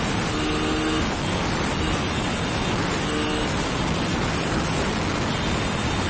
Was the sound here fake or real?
real